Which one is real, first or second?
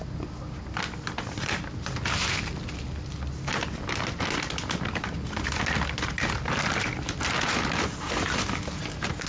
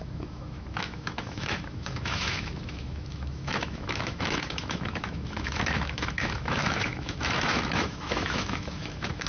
first